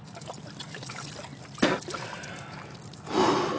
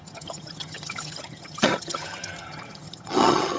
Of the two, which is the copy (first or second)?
second